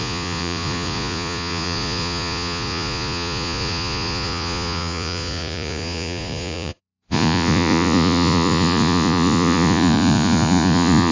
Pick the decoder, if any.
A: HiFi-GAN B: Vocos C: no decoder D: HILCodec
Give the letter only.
B